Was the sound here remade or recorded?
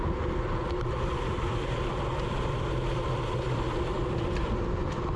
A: remade